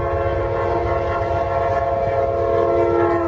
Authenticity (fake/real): real